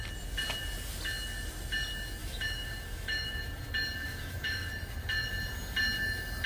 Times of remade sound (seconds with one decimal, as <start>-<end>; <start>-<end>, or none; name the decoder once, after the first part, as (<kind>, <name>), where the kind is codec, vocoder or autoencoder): 2.2-3.4 (autoencoder, DAC-VAE); 4.0-4.7